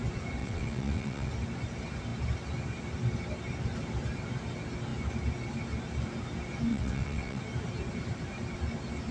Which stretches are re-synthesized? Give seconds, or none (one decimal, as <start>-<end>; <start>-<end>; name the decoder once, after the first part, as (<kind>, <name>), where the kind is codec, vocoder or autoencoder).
0.4-1.3 (vocoder, WaveNeXt); 6.7-7.4